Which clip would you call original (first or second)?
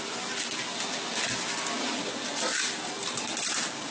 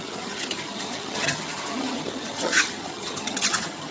first